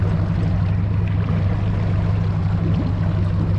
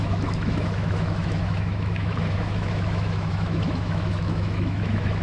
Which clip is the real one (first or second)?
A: first